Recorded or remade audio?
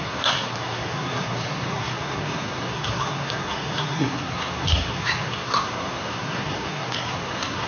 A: remade